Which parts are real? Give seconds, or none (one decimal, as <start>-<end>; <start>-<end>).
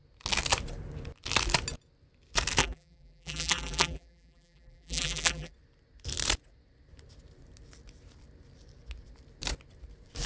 0.0-2.6; 5.5-10.3